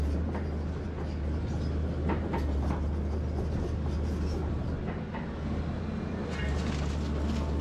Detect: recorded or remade recorded